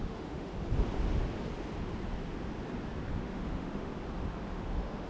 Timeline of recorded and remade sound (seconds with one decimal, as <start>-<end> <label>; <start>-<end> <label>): 0.0-0.5 remade; 0.5-3.2 recorded; 3.2-3.9 remade; 3.9-4.5 recorded; 4.5-5.1 remade